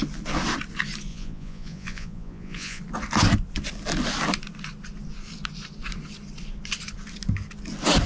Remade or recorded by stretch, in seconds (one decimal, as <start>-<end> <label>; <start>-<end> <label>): 0.0-1.1 recorded; 1.1-2.8 remade; 2.8-8.1 recorded